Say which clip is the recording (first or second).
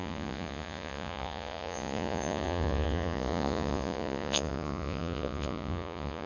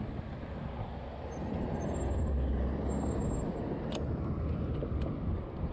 second